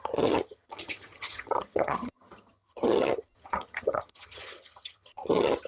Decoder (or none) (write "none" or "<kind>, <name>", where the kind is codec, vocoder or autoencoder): vocoder, HiFi-GAN